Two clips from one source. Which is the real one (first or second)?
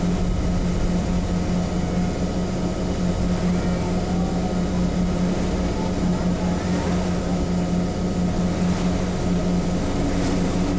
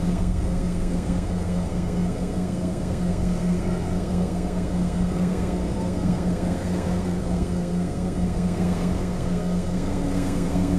first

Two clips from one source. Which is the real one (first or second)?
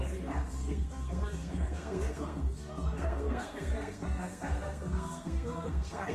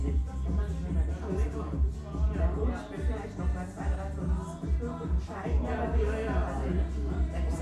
second